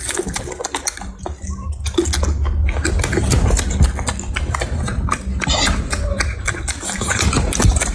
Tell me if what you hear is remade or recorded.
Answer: recorded